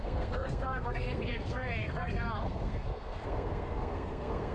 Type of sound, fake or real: fake